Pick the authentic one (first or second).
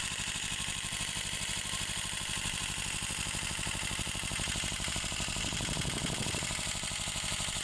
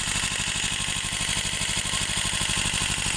second